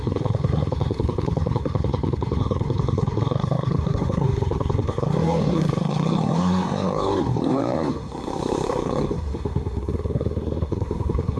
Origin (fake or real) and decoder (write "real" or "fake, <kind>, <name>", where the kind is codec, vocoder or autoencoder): fake, codec, SNAC